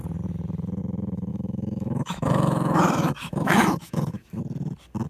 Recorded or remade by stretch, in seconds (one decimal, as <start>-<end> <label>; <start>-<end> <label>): 0.0-1.3 recorded; 1.3-4.4 remade; 4.4-5.1 recorded